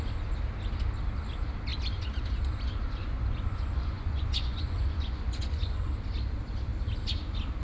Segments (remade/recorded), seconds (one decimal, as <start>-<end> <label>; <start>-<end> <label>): 0.0-3.0 recorded; 3.0-5.9 remade; 5.9-7.6 recorded